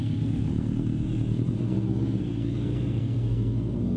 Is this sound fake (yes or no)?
yes